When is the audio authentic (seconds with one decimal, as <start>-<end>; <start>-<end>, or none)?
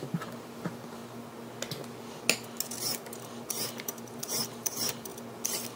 1.0-3.5; 5.1-5.8